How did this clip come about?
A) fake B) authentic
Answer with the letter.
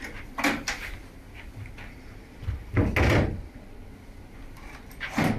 B